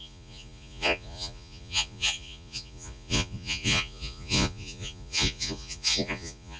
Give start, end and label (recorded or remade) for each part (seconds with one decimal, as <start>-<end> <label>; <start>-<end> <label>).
0.0-6.6 remade

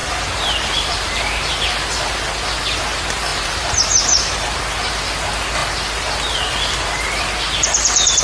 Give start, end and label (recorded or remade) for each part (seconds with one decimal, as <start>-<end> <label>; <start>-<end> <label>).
0.0-1.2 remade; 1.2-3.3 recorded; 3.3-4.4 remade; 4.4-8.2 recorded

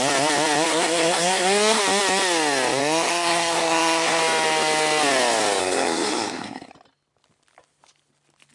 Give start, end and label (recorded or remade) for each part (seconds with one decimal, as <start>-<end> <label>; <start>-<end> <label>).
0.0-0.7 recorded; 0.7-1.8 remade; 1.8-2.8 recorded; 2.8-4.2 remade; 4.2-5.6 recorded; 5.6-6.7 remade; 6.7-8.5 recorded

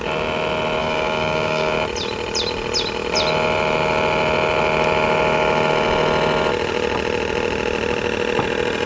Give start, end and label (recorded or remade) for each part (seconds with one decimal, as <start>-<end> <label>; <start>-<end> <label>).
0.0-0.8 recorded; 0.8-1.7 remade; 1.7-8.9 recorded

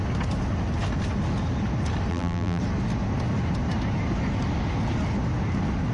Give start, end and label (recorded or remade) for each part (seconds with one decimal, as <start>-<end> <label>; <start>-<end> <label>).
0.0-2.1 recorded; 2.1-2.6 remade; 2.6-5.9 recorded

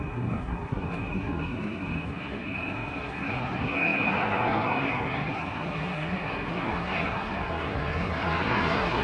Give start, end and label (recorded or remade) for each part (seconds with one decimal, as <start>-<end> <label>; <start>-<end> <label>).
0.0-9.0 remade

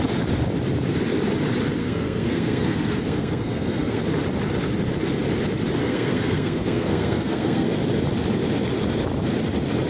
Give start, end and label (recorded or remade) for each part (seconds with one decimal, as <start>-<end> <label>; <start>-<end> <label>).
0.0-1.8 recorded; 1.8-4.0 remade; 4.0-5.8 recorded; 5.8-7.7 remade; 7.7-9.9 recorded

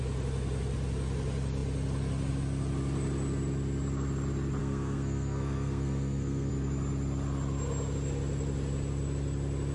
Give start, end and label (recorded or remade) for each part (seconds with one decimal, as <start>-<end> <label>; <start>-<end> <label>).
0.0-4.6 recorded; 4.6-6.5 remade; 6.5-9.7 recorded